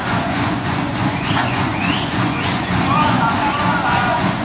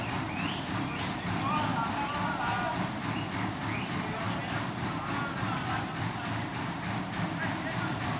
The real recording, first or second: second